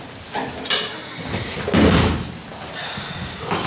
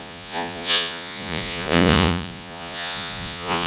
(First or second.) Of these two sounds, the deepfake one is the second